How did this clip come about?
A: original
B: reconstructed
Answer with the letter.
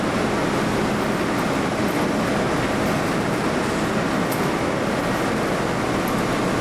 A